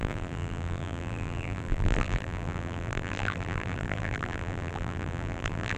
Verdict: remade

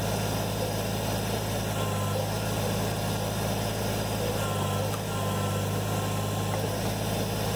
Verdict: recorded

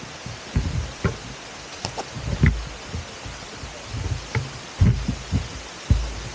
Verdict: recorded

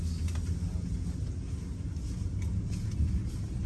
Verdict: recorded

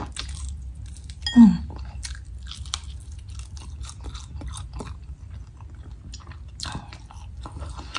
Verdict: recorded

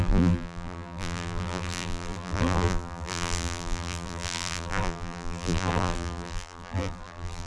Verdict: remade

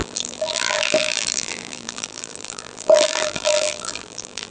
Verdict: remade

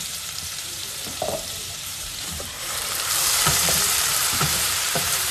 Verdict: remade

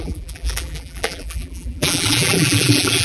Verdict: remade